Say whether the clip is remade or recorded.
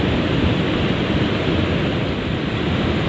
recorded